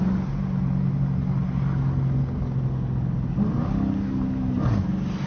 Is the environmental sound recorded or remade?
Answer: recorded